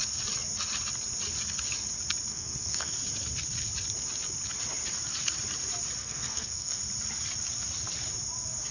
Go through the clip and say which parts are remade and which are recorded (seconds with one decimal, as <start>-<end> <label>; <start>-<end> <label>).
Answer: 0.0-2.3 recorded; 2.3-2.9 remade; 2.9-6.0 recorded; 6.0-6.8 remade; 6.8-8.7 recorded